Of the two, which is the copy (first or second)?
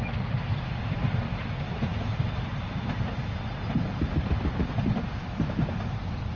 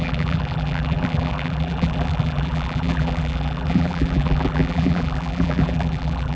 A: second